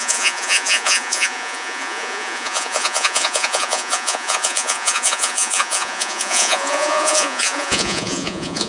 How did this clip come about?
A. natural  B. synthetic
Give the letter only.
B